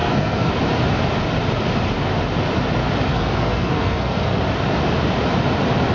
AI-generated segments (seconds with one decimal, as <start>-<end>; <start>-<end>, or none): 0.0-0.5; 3.1-4.4